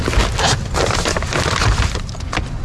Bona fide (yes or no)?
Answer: yes